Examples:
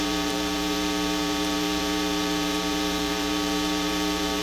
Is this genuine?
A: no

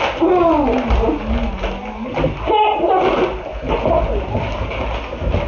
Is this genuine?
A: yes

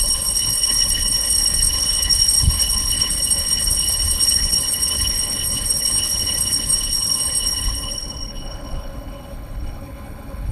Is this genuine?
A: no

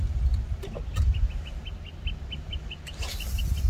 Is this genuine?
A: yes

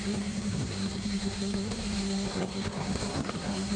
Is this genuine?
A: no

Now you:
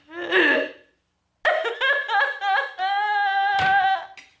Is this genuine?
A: yes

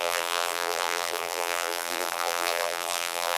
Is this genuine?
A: no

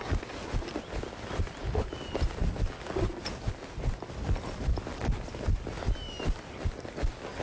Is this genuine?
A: yes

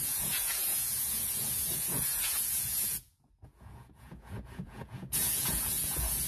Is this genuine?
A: no